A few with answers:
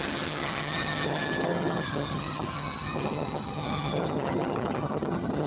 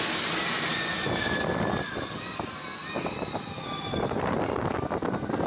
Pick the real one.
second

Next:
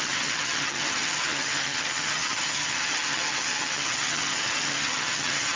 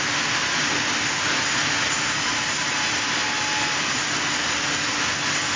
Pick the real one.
second